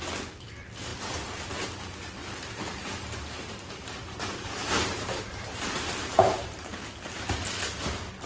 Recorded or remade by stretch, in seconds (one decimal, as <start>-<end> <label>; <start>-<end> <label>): 0.0-2.2 recorded; 2.2-6.8 remade; 6.8-8.3 recorded